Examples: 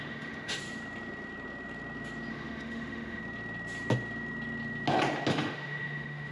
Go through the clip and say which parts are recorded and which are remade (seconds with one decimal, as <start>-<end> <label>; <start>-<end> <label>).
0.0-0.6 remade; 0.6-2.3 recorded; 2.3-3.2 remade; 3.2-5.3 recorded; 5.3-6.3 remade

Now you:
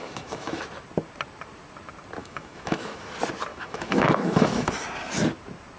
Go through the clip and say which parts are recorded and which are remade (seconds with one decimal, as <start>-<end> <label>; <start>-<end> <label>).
0.0-0.6 remade; 0.6-2.2 recorded; 2.2-3.1 remade; 3.1-3.5 recorded; 3.5-4.7 remade; 4.7-5.8 recorded

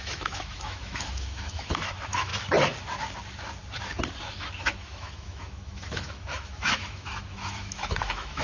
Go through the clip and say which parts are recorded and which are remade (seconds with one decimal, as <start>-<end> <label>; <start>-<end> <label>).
0.0-2.3 remade; 2.3-4.6 recorded; 4.6-8.4 remade

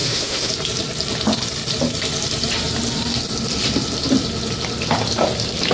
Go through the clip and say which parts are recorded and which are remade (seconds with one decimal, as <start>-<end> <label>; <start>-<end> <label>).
0.0-0.5 remade; 0.5-5.7 recorded

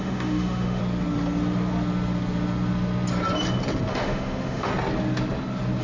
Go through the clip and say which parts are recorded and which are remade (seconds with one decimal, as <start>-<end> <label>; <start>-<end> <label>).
0.0-0.8 remade; 0.8-3.9 recorded; 3.9-4.7 remade; 4.7-5.8 recorded

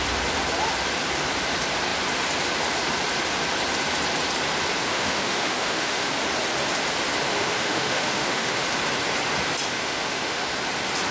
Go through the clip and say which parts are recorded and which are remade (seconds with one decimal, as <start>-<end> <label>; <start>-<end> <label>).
0.0-4.8 recorded; 4.8-6.1 remade; 6.1-7.3 recorded; 7.3-8.6 remade; 8.6-9.7 recorded; 9.7-10.5 remade; 10.5-11.1 recorded